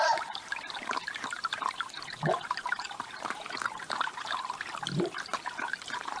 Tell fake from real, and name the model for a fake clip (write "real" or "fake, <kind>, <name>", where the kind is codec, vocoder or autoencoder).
fake, vocoder, BigVGAN v2